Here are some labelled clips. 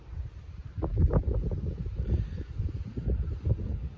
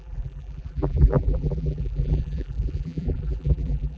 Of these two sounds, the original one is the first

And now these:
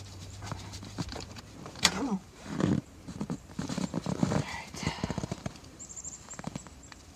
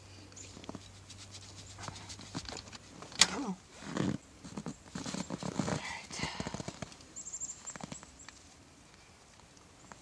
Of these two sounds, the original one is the second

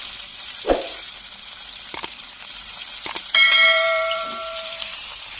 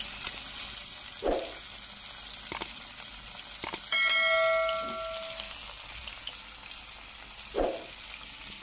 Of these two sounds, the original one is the second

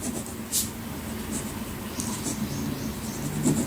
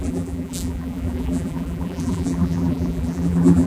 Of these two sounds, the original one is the first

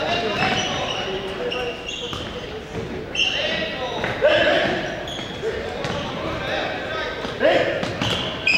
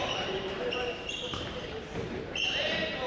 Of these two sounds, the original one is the first